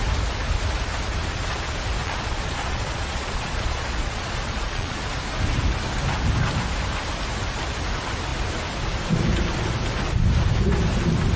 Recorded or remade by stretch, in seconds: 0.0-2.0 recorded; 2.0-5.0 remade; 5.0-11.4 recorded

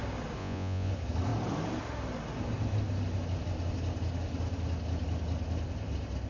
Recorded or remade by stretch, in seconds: 0.0-0.4 recorded; 0.4-0.9 remade; 0.9-6.3 recorded

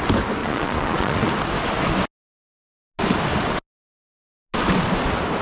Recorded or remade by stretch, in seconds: 0.0-0.4 recorded; 0.4-1.3 remade; 1.3-5.4 recorded